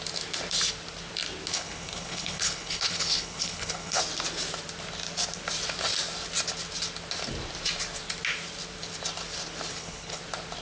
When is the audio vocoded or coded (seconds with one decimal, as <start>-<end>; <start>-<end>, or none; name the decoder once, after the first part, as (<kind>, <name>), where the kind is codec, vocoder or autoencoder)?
1.5-4.0 (codec, HILCodec); 9.7-10.2